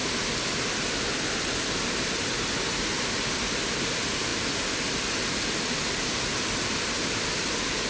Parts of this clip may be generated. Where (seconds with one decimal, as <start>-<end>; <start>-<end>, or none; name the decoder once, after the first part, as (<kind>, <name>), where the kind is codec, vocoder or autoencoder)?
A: 6.1-6.8 (vocoder, BigVGAN v2)